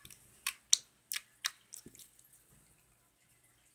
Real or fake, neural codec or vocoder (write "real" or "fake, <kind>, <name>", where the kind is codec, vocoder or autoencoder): real